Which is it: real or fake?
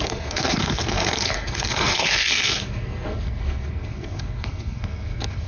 fake